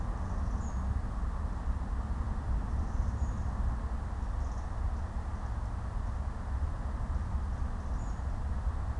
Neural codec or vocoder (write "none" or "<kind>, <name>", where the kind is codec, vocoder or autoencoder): none